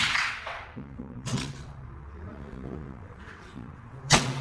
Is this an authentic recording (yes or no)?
no